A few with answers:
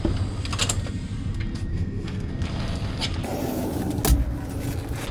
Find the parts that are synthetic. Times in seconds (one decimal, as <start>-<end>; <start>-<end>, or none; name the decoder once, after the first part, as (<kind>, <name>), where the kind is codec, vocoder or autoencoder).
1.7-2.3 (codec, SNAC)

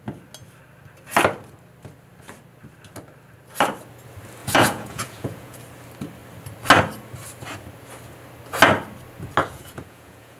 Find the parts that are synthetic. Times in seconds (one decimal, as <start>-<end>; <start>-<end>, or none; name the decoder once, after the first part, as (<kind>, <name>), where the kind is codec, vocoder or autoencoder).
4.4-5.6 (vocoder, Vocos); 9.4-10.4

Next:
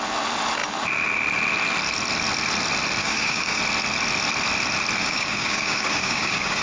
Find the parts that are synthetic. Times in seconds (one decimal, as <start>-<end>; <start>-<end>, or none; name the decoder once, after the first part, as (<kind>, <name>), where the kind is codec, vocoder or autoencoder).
3.0-3.6 (codec, DAC); 5.0-6.6

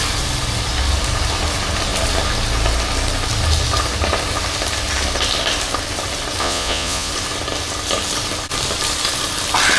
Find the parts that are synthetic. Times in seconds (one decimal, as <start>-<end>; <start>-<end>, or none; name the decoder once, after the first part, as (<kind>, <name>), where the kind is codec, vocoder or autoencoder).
6.4-7.1 (vocoder, Vocos)

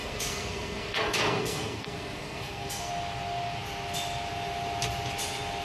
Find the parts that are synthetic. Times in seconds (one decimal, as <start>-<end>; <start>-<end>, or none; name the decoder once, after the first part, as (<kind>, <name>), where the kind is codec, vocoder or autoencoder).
0.0-2.9 (codec, SNAC)

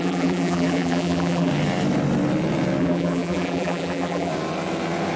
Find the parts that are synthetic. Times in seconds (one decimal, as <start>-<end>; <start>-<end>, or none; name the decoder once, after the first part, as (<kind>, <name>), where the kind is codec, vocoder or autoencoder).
0.0-1.5 (vocoder, BigVGAN v2); 2.8-4.3

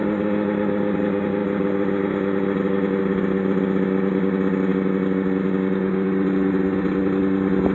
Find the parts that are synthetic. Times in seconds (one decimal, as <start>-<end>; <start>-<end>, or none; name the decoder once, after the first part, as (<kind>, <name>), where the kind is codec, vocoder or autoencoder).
none